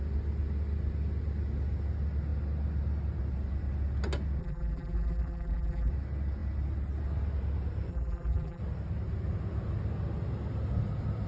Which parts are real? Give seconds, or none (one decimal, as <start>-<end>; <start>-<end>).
0.0-4.4; 5.9-7.9; 8.6-11.3